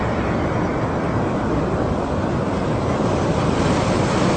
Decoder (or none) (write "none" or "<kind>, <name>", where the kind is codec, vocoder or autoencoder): none